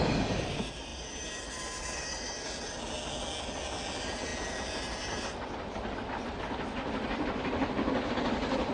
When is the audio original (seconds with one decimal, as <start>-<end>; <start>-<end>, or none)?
0.0-8.7